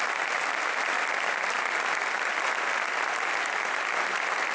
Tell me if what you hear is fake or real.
real